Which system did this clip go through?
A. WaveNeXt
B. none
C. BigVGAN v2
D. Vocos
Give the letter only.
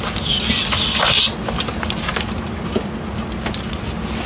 B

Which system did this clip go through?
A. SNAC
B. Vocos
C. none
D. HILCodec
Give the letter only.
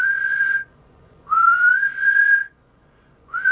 B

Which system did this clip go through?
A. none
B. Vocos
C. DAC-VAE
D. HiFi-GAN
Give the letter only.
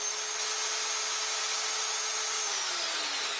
A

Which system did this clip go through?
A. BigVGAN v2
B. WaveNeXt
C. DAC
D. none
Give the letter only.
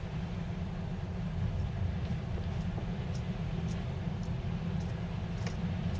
D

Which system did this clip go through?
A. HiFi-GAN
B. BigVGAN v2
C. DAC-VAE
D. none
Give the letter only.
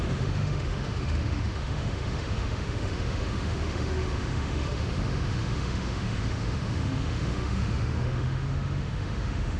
C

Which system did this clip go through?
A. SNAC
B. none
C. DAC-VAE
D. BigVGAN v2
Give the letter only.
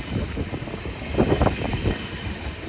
B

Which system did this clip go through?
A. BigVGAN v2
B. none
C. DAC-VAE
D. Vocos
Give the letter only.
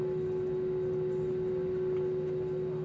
B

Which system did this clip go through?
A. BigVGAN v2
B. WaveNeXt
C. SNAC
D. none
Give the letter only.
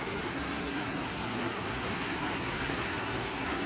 C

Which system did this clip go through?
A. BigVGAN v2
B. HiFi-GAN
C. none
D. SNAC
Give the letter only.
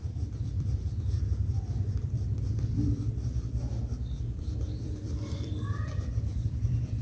A